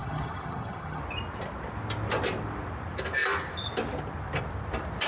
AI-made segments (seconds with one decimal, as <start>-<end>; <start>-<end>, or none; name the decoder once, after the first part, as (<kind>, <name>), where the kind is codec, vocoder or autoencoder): 0.0-1.0 (vocoder, HiFi-GAN)